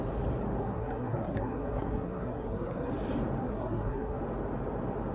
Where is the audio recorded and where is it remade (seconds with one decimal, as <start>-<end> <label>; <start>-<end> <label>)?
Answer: 0.0-0.6 recorded; 0.6-2.9 remade; 2.9-3.4 recorded; 3.4-4.2 remade; 4.2-5.1 recorded